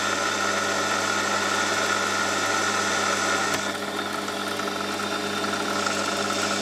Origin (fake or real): real